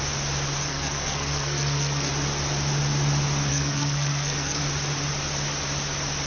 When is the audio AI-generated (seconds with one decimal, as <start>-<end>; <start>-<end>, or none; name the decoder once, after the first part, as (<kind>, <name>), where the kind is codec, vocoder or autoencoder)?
0.7-2.1 (codec, SNAC); 3.5-4.6